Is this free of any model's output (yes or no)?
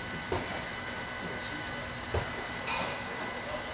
yes